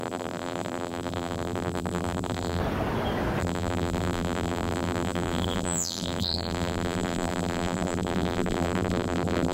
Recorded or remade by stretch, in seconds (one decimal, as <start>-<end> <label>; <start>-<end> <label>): 0.0-2.6 remade; 2.6-3.4 recorded; 3.4-9.5 remade